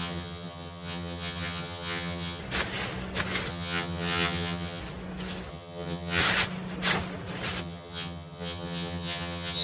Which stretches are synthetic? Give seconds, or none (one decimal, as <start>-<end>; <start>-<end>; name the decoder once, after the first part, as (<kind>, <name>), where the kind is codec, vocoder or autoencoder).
0.0-2.4 (vocoder, HiFi-GAN); 3.5-4.8; 5.5-6.2; 7.6-9.6